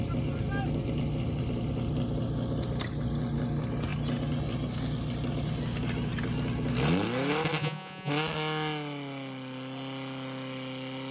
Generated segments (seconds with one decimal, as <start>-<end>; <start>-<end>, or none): 7.6-8.1